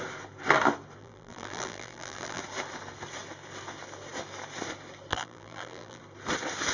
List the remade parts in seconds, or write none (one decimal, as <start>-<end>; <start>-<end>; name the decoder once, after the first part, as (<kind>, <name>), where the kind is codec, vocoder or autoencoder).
1.0-2.4 (vocoder, BigVGAN v2); 5.1-6.0